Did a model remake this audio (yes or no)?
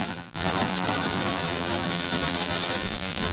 yes